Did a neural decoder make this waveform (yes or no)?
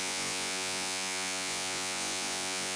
yes